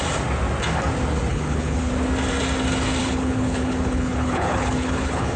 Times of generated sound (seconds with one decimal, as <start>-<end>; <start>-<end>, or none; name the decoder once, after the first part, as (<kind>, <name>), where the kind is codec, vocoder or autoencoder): 1.3-1.9 (codec, HILCodec); 3.0-5.4